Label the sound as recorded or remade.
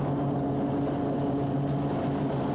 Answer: recorded